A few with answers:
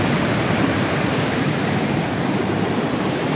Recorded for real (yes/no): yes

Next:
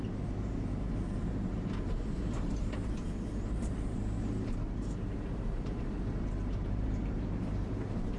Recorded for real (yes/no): no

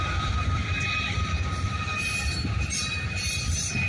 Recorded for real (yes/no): no